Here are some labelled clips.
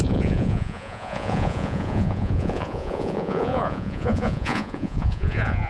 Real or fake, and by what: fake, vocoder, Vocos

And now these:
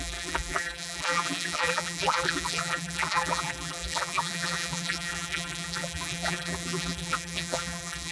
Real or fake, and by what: fake, vocoder, BigVGAN v2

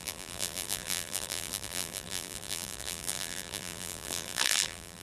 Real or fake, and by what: fake, vocoder, BigVGAN v2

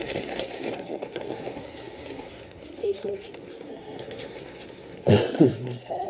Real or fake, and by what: fake, codec, SNAC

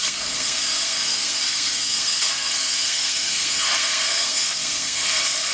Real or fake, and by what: fake, codec, SNAC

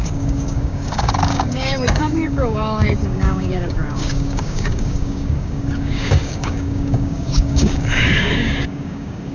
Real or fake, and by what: fake, codec, DAC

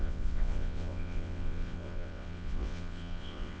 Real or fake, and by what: fake, vocoder, WaveNeXt